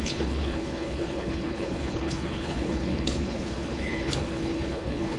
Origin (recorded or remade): remade